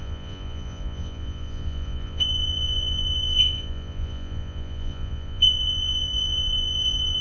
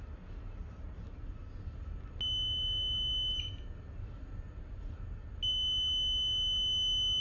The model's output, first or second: first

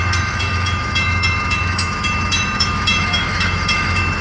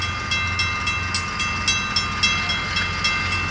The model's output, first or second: first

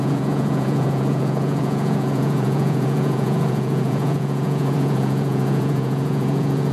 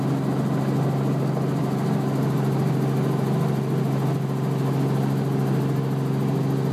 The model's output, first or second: first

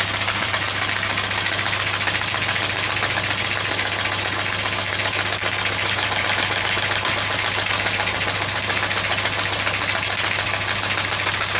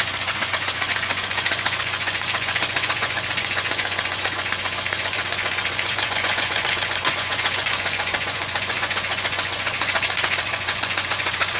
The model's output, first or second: second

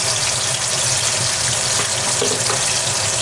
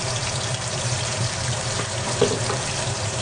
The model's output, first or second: second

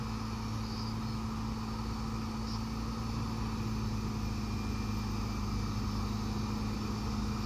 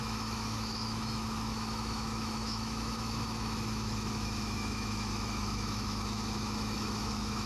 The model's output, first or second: second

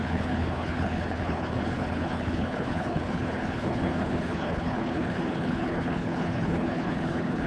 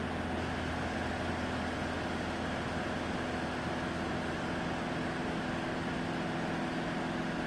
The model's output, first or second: first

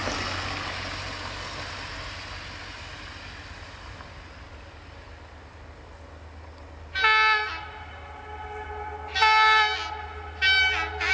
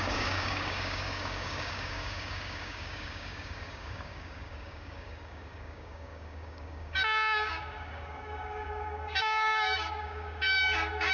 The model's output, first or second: second